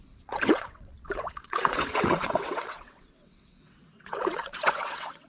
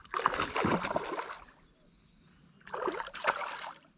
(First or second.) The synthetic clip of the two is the first